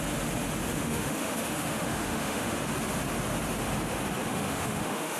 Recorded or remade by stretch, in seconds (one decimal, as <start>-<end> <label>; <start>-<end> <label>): 0.0-0.6 recorded; 0.6-2.6 remade; 2.6-4.3 recorded; 4.3-5.2 remade